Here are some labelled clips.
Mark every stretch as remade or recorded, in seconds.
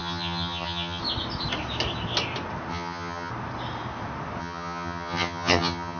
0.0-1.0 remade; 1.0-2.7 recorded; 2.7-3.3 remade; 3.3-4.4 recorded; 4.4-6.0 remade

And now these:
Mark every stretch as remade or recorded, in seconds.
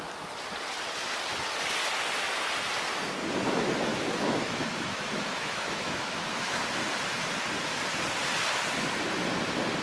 0.0-3.9 recorded; 3.9-6.6 remade; 6.6-9.8 recorded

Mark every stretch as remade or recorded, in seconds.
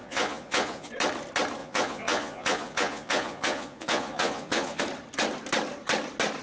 0.0-0.9 remade; 0.9-1.6 recorded; 1.6-4.8 remade; 4.8-6.4 recorded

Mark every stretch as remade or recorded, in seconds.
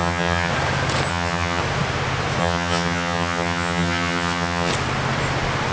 0.0-0.5 remade; 0.5-1.1 recorded; 1.1-1.6 remade; 1.6-2.4 recorded; 2.4-4.7 remade; 4.7-5.7 recorded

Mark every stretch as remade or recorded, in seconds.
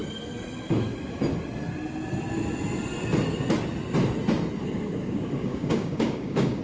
0.0-4.6 recorded; 4.6-6.6 remade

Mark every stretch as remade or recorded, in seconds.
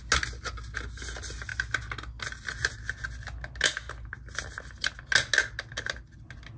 0.0-6.6 recorded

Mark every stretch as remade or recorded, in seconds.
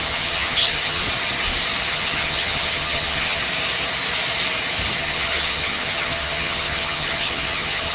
0.0-1.0 remade; 1.0-1.9 recorded; 1.9-3.4 remade; 3.4-5.0 recorded; 5.0-7.9 remade